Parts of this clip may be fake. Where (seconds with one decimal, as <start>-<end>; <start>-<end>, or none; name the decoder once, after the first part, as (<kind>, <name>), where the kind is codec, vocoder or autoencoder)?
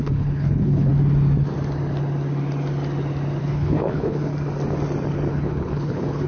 0.0-0.9 (codec, HILCodec); 3.4-4.3; 5.3-6.3